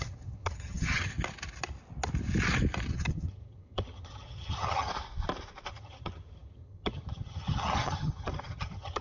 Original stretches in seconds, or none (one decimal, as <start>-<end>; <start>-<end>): 1.1-2.9; 4.9-5.7